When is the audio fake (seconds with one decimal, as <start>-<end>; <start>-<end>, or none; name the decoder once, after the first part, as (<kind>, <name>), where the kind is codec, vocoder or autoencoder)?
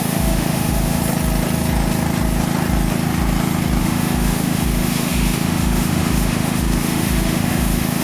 0.0-1.0 (autoencoder, DAC-VAE); 3.8-8.0